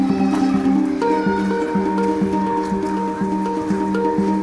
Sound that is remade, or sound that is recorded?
recorded